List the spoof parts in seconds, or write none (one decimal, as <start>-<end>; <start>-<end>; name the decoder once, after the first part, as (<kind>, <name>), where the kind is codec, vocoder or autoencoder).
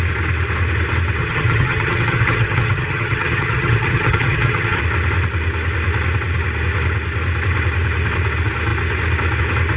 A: 1.2-4.8 (vocoder, HiFi-GAN)